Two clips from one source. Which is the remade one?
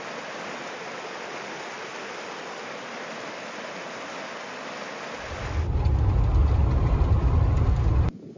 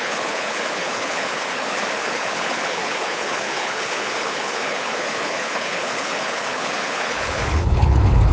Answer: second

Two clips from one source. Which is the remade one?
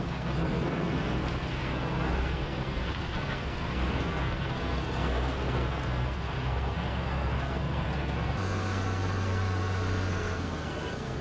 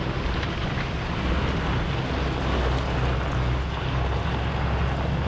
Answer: first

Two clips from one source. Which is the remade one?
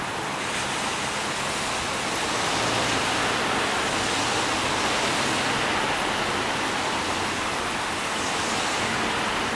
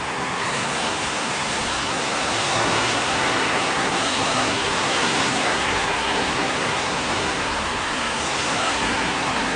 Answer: second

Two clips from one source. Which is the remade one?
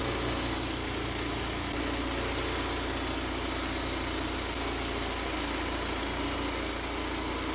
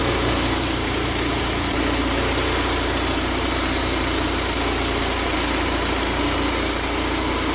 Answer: second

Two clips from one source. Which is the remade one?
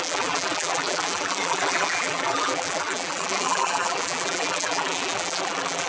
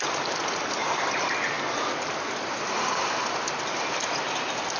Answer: first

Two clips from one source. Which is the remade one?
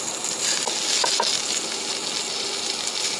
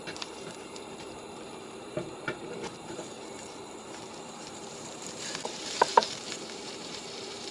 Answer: second